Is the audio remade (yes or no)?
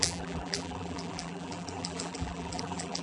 yes